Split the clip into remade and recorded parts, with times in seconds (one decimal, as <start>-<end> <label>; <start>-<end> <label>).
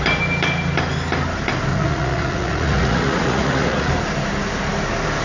0.0-1.7 recorded; 1.7-3.9 remade; 3.9-5.2 recorded